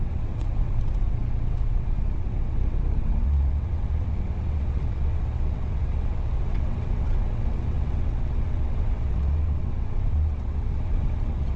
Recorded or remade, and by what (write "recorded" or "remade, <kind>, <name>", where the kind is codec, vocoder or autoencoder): remade, vocoder, WaveNeXt